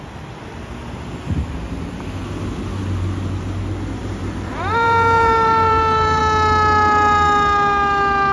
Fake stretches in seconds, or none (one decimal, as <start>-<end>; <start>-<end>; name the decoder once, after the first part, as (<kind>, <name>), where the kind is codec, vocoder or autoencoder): 4.0-6.2 (vocoder, BigVGAN v2)